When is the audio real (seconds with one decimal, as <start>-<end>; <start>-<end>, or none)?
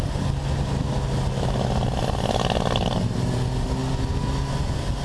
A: 0.0-5.0